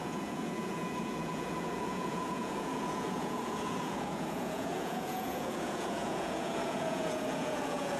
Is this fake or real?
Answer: fake